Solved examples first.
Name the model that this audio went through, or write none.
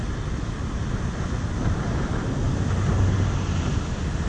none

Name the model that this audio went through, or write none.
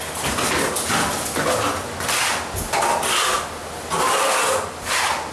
none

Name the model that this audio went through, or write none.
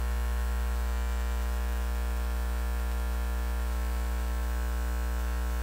autoencoder, DAC-VAE